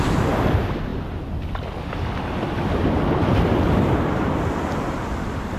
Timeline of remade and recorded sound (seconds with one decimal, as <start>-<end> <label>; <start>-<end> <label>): 0.0-5.6 recorded